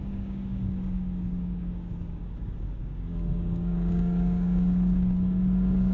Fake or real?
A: fake